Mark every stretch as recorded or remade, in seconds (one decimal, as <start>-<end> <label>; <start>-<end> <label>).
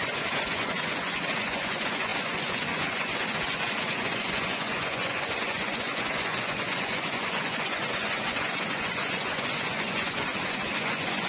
0.0-11.3 remade